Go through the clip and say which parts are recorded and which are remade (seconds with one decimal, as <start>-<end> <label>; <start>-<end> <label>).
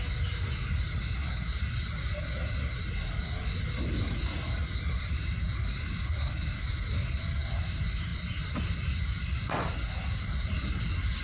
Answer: 0.0-11.2 recorded